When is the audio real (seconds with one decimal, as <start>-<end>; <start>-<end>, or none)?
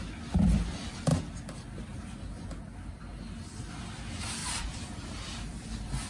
0.0-4.4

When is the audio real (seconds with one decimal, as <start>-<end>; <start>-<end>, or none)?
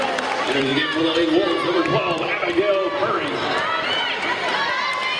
0.7-3.8